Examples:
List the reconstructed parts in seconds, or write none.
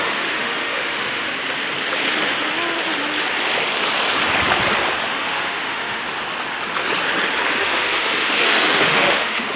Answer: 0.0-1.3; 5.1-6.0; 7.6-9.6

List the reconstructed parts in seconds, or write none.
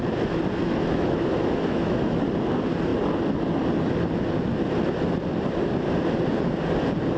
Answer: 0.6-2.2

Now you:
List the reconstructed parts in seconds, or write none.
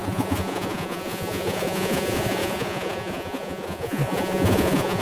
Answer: 0.0-5.0